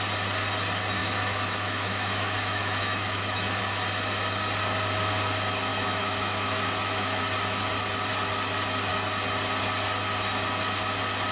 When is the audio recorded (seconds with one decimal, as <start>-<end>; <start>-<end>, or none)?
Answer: 0.0-1.0; 3.6-5.7; 7.2-11.3